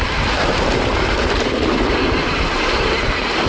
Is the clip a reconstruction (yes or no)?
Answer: no